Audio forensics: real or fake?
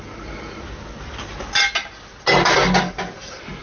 real